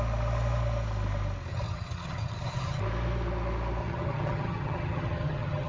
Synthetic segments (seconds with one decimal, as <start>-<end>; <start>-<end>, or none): 1.5-2.8; 3.8-5.7